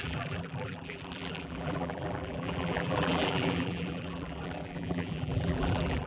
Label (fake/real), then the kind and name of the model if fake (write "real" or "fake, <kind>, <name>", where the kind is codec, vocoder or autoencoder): fake, vocoder, BigVGAN v2